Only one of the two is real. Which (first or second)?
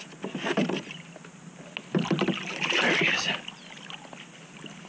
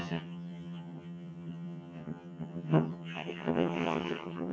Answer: first